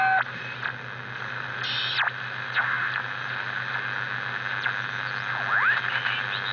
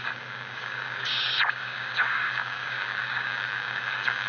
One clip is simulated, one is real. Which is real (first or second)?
first